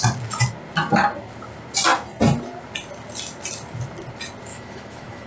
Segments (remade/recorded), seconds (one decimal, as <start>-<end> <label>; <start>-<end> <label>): 0.0-4.5 recorded; 4.5-5.3 remade